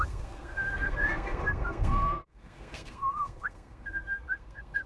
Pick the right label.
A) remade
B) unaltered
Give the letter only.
A